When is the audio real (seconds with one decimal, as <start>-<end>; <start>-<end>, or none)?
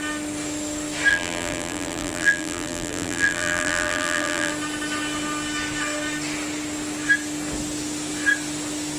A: 0.0-1.1; 4.5-9.0